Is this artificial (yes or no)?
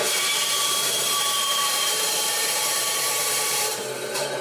yes